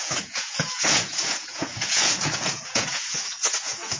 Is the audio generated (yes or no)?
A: yes